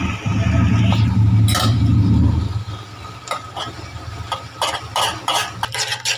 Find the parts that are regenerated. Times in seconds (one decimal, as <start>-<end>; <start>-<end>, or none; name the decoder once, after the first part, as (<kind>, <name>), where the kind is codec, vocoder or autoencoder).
none